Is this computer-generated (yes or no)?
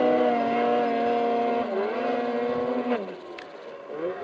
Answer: no